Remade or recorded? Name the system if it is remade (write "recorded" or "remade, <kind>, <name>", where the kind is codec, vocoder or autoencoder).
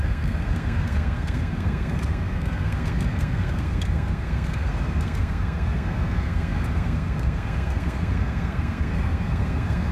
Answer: remade, codec, SNAC